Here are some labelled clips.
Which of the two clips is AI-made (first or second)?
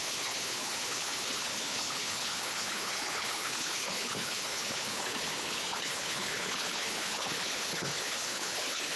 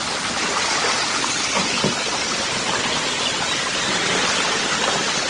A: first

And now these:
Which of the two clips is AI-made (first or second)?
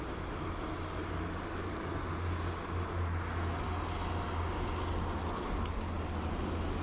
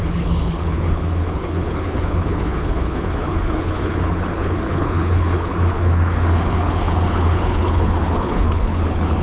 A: second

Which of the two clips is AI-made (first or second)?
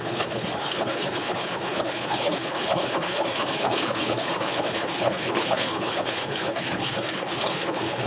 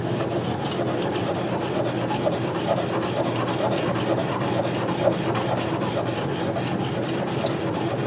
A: first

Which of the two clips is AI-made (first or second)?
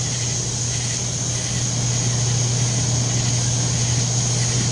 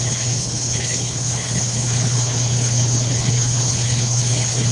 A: second